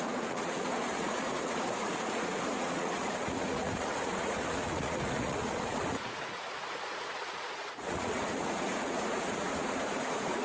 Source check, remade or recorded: remade